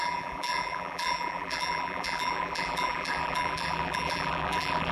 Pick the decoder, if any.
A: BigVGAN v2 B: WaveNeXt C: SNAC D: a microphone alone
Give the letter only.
A